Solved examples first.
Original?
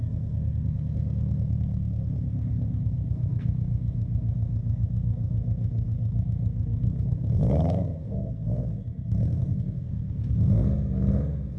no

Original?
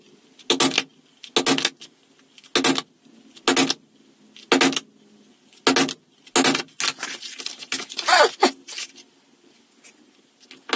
yes